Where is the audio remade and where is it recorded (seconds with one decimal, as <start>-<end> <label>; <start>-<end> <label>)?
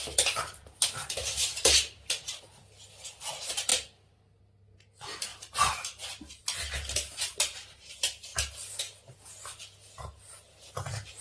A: 0.0-1.2 recorded; 1.2-2.4 remade; 2.4-3.7 recorded; 3.7-4.4 remade; 4.4-11.2 recorded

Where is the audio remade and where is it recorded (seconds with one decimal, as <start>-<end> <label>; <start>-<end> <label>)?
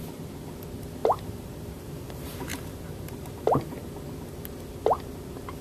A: 0.0-1.0 recorded; 1.0-3.9 remade; 3.9-5.6 recorded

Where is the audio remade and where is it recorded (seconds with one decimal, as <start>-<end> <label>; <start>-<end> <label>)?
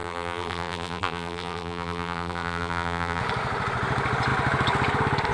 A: 0.0-3.2 remade; 3.2-5.3 recorded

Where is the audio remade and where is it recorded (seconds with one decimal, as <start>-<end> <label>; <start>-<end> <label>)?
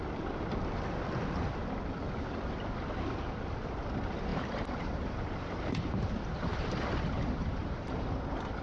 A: 0.0-4.3 recorded; 4.3-5.2 remade; 5.2-6.5 recorded; 6.5-8.1 remade; 8.1-8.6 recorded